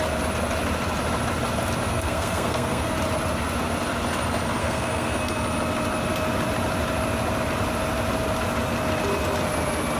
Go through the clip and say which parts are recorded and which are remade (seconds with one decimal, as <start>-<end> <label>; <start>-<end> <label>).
0.0-1.9 recorded; 1.9-2.9 remade; 2.9-4.6 recorded; 4.6-5.2 remade; 5.2-10.0 recorded